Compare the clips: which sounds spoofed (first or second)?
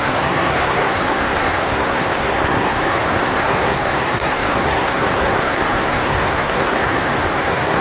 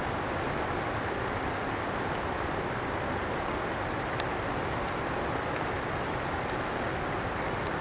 first